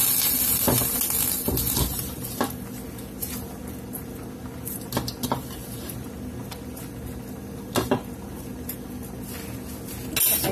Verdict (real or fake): real